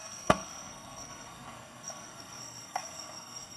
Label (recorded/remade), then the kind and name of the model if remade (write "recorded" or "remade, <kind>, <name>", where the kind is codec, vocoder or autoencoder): remade, codec, SNAC